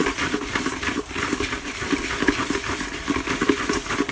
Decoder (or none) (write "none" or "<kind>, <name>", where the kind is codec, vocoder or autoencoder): vocoder, BigVGAN v2